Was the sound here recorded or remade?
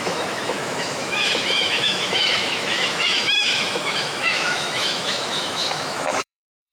remade